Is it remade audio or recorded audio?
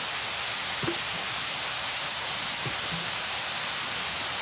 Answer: recorded